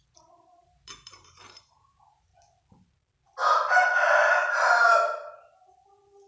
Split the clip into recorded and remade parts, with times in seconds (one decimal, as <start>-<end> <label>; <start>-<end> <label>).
0.0-2.3 remade; 2.3-6.3 recorded